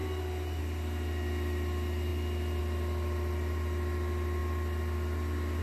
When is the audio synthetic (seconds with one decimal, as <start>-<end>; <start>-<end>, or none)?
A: none